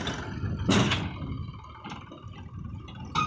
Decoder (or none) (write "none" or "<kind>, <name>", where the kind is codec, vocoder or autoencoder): none